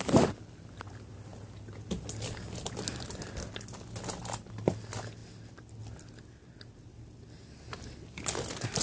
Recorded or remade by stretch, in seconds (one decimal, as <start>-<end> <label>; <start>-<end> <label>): 0.0-8.8 recorded